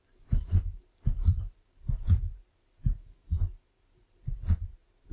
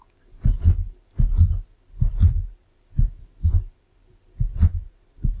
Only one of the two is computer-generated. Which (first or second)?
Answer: first